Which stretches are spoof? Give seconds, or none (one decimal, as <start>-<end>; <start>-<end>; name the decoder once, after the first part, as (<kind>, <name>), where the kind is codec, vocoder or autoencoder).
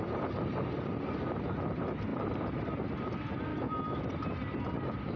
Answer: 3.5-4.1 (autoencoder, DAC-VAE)